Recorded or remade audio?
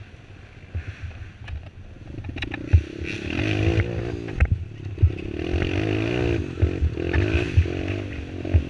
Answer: recorded